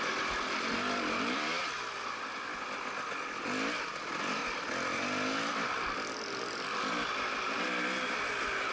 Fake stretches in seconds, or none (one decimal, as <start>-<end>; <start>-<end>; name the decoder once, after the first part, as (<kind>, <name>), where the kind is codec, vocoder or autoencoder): none